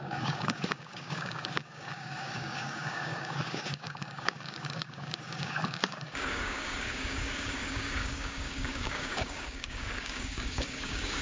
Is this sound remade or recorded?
remade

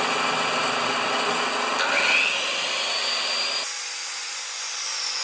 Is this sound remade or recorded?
recorded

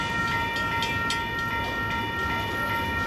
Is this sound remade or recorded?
recorded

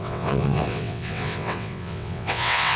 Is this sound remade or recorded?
remade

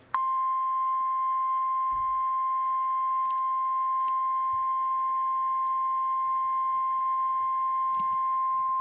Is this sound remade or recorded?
recorded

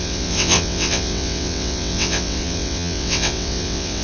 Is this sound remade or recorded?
remade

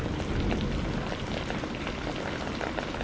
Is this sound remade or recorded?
recorded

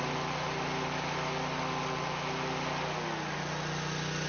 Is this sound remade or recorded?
recorded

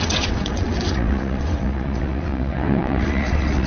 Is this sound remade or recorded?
remade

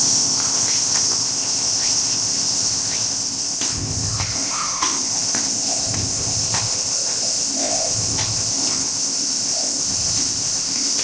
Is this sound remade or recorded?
remade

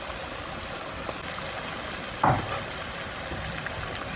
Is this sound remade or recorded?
recorded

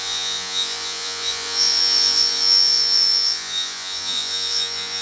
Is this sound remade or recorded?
remade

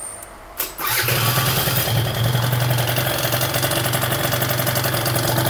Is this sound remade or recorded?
recorded